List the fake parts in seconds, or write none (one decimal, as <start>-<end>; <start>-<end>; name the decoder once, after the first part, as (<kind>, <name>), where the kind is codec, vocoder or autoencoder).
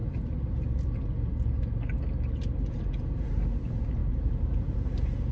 2.7-5.3 (vocoder, BigVGAN v2)